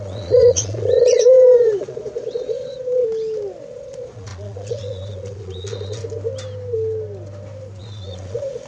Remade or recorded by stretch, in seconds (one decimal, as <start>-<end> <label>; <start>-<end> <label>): 0.0-3.0 remade; 3.0-3.7 recorded; 3.7-6.0 remade; 6.0-7.8 recorded; 7.8-8.7 remade